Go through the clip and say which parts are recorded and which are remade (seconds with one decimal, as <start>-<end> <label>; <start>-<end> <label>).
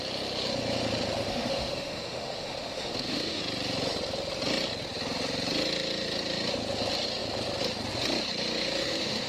0.0-1.3 recorded; 1.3-3.4 remade; 3.4-8.8 recorded; 8.8-9.3 remade